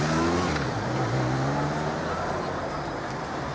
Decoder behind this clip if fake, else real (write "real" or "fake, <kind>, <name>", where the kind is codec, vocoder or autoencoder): real